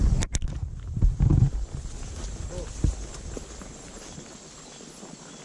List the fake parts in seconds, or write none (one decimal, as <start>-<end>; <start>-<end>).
none